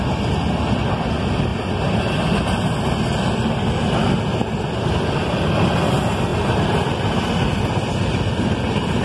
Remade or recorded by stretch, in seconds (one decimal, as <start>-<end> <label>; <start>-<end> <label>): 0.0-9.0 recorded